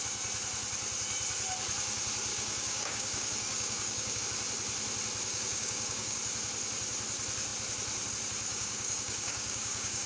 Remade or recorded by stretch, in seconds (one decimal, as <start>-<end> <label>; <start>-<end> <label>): 0.0-2.3 recorded; 2.3-4.2 remade; 4.2-5.3 recorded; 5.3-6.2 remade; 6.2-8.5 recorded; 8.5-10.1 remade